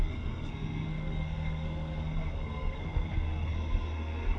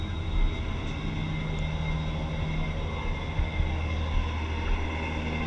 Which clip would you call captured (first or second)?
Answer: second